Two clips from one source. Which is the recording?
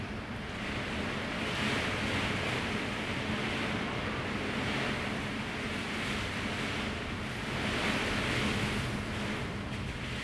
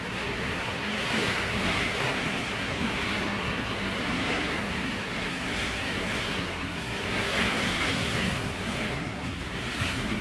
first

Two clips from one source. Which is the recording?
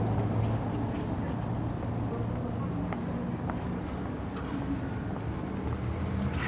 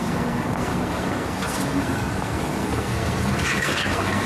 first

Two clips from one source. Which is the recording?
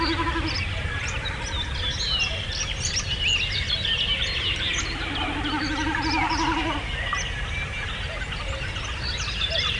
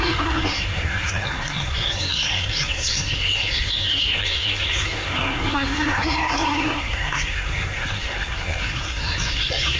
first